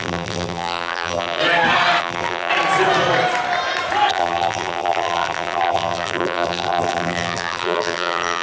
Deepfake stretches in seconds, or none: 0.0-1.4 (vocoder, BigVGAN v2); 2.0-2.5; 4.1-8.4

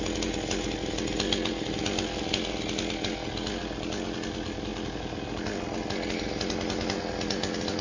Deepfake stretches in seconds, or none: none

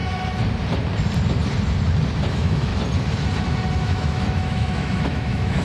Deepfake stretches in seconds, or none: 2.3-2.7 (autoencoder, DAC-VAE); 3.8-5.6

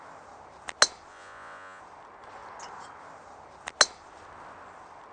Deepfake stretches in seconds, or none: 1.1-1.8 (vocoder, Vocos)

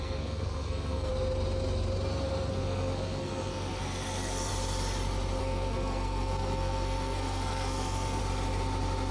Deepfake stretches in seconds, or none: 0.0-1.1 (codec, SNAC); 2.5-4.5; 5.4-8.2